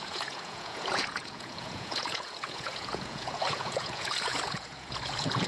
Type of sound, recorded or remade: remade